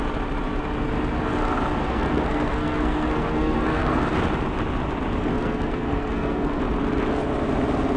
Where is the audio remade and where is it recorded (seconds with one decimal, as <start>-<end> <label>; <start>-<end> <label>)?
0.0-1.8 recorded; 1.8-4.0 remade; 4.0-5.2 recorded; 5.2-6.6 remade; 6.6-8.0 recorded